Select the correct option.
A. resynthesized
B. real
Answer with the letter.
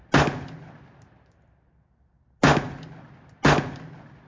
B